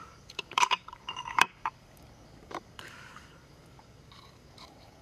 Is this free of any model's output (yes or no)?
no